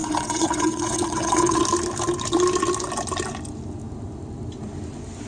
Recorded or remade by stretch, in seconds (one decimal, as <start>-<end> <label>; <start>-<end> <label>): 0.0-1.6 remade; 1.6-5.3 recorded